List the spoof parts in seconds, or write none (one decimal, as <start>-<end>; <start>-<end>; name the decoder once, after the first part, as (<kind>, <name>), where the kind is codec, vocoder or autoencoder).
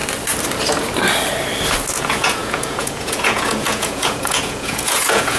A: 2.0-5.4 (vocoder, Vocos)